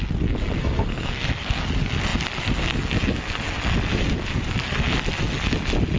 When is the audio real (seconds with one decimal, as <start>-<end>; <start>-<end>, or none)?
0.0-0.6; 1.6-6.0